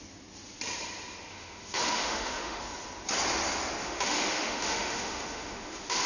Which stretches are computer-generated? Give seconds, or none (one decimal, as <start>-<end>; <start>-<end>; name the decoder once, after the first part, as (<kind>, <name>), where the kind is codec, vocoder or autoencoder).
1.3-2.6 (autoencoder, DAC-VAE); 3.8-6.1